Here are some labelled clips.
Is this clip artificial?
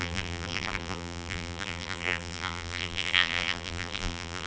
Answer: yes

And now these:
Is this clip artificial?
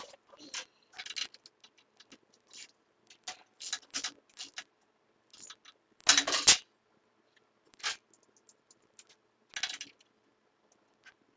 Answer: no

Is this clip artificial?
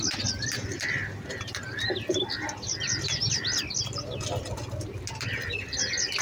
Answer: no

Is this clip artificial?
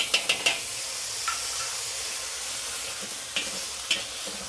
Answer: no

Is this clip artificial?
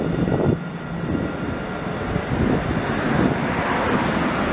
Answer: no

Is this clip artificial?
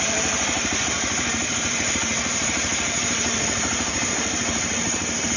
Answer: yes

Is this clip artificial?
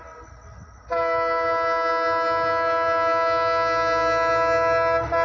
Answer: no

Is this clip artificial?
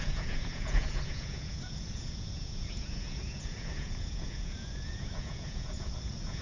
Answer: yes